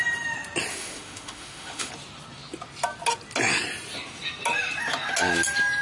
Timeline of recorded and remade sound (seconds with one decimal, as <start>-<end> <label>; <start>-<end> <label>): 0.0-0.7 recorded; 0.7-1.9 remade; 1.9-5.8 recorded